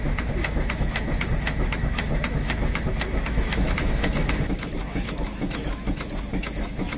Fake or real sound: fake